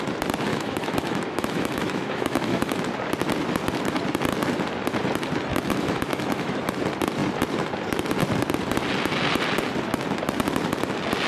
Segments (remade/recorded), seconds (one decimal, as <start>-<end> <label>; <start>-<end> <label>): 0.0-0.5 recorded; 0.5-2.8 remade; 2.8-5.5 recorded; 5.5-6.5 remade; 6.5-11.3 recorded